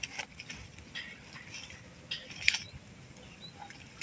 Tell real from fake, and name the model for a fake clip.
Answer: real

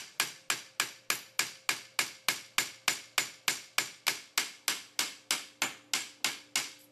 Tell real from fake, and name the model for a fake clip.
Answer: real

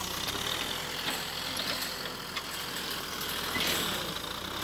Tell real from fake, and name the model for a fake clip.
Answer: real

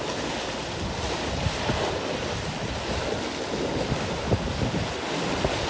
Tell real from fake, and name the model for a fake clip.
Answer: real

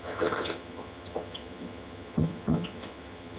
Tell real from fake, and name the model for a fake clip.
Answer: fake, vocoder, HiFi-GAN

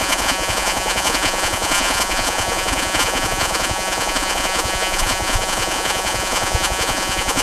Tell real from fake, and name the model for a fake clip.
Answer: fake, vocoder, Vocos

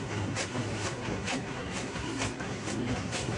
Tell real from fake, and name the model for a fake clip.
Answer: fake, codec, SNAC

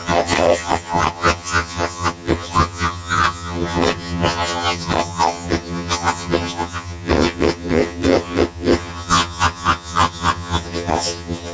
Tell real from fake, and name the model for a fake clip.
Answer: fake, vocoder, HiFi-GAN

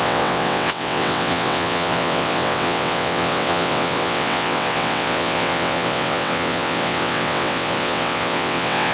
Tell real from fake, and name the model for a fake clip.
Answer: fake, vocoder, WaveNeXt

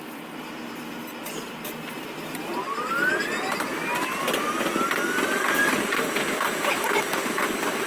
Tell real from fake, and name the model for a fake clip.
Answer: real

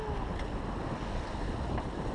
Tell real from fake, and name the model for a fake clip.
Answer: real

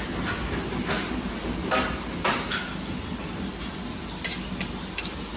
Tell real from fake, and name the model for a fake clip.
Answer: real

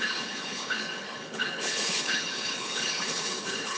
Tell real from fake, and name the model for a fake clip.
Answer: fake, codec, HILCodec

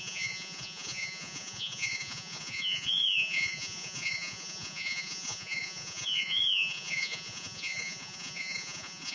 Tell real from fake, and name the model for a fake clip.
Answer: fake, vocoder, Vocos